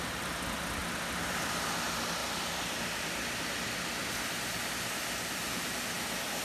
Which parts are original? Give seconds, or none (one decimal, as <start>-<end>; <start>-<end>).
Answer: 0.0-2.2; 4.7-6.4